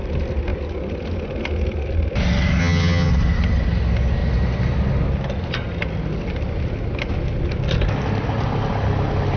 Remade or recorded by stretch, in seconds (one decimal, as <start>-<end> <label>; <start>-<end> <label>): 0.0-2.6 recorded; 2.6-3.1 remade; 3.1-9.4 recorded